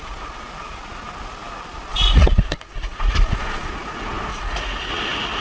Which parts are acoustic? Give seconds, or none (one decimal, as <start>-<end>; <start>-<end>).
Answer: 0.0-1.9; 3.7-4.3; 4.9-5.4